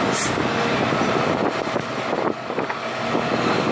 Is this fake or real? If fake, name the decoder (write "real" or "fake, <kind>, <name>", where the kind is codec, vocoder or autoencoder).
real